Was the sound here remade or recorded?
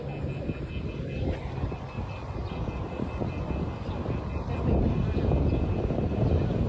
recorded